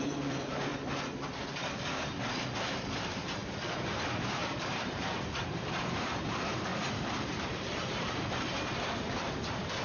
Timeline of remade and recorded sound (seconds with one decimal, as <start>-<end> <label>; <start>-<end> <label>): 0.0-0.7 remade; 0.7-2.6 recorded; 2.6-6.7 remade; 6.7-7.5 recorded; 7.5-9.8 remade